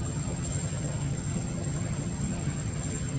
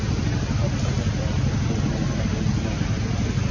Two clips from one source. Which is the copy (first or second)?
first